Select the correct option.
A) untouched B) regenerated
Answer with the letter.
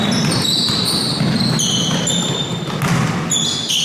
A